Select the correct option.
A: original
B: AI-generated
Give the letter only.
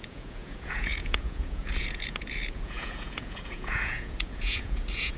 B